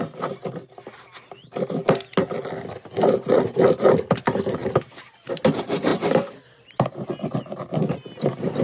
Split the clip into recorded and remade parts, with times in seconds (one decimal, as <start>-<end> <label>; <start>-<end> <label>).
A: 0.0-8.6 recorded

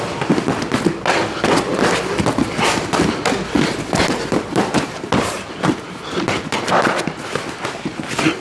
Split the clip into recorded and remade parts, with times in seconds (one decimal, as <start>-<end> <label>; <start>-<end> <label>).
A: 0.0-4.3 recorded; 4.3-6.6 remade; 6.6-8.4 recorded

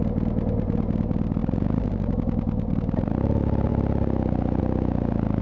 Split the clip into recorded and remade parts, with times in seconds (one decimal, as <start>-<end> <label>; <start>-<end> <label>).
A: 0.0-5.4 recorded

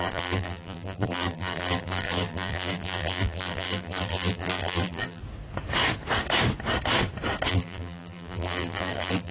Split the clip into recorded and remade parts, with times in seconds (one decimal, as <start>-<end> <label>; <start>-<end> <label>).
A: 0.0-5.2 remade; 5.2-7.5 recorded; 7.5-9.3 remade

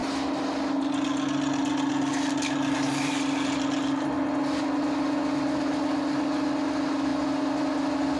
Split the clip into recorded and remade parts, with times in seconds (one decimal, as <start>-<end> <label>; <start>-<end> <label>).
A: 0.0-8.2 recorded

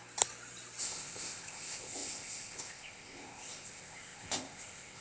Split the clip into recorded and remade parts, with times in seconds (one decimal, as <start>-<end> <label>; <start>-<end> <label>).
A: 0.0-0.8 recorded; 0.8-5.0 remade